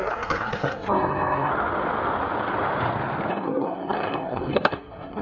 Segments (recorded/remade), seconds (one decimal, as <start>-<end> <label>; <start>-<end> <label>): 0.0-1.5 remade; 1.5-3.3 recorded; 3.3-5.2 remade